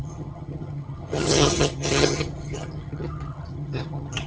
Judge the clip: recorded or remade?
remade